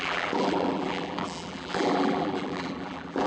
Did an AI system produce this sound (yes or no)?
yes